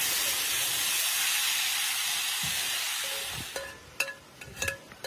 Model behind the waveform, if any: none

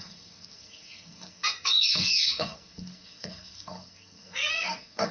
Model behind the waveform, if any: codec, SNAC